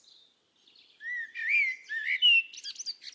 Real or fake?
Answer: real